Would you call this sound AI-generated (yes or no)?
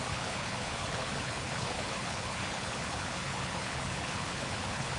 yes